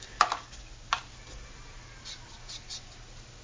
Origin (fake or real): real